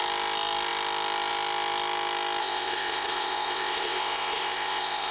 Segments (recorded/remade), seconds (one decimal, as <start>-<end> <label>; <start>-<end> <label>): 0.0-2.4 recorded; 2.4-5.1 remade